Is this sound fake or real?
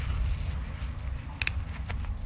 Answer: real